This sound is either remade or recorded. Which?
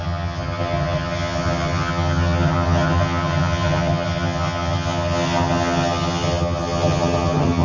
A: remade